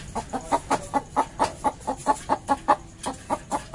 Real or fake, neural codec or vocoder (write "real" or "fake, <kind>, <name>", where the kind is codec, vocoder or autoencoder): real